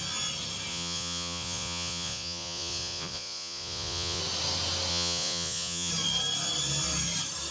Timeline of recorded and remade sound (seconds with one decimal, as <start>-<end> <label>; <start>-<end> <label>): 0.0-0.7 recorded; 0.7-4.2 remade; 4.2-4.9 recorded; 4.9-5.9 remade; 5.9-7.5 recorded